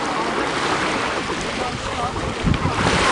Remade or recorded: recorded